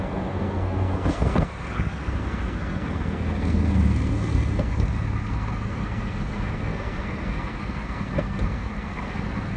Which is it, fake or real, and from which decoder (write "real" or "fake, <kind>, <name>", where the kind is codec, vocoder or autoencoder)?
fake, codec, SNAC